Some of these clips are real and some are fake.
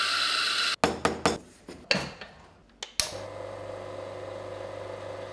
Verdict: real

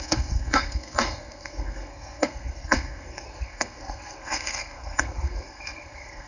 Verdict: fake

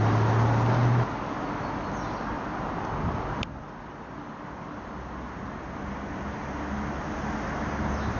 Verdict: real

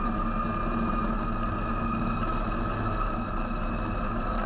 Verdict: real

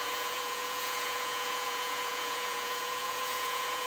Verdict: fake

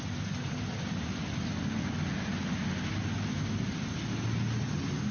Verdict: real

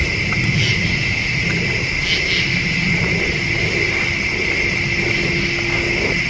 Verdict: real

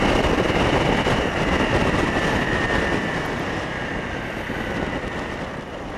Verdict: real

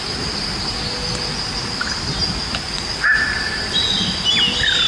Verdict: real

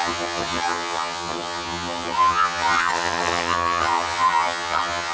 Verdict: fake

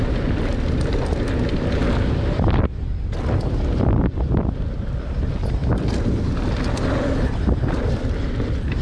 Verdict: real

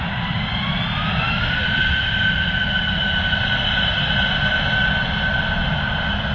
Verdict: real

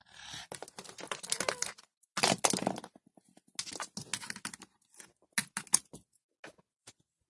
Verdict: real